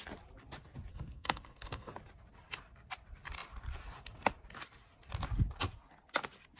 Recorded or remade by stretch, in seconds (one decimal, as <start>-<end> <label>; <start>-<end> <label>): 0.0-0.9 recorded; 0.9-1.9 remade; 1.9-6.6 recorded